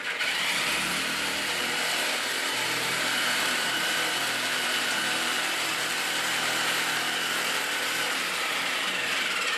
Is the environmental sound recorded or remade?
remade